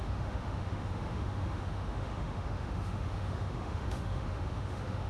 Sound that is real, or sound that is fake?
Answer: fake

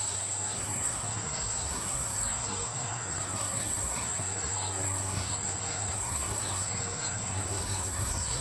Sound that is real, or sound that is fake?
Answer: fake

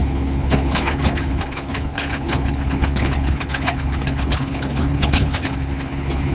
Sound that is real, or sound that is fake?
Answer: fake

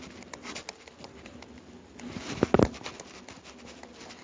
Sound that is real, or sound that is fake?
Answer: real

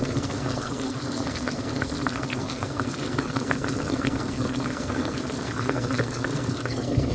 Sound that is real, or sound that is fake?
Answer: fake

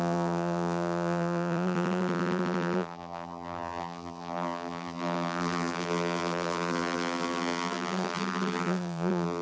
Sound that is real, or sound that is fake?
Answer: fake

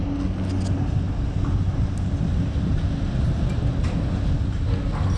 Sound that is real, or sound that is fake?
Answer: real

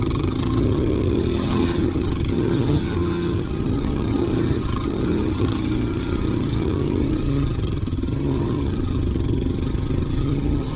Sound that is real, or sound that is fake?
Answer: fake